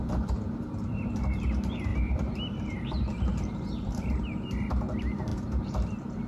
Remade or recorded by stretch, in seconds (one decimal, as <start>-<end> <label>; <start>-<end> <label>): 0.0-6.3 remade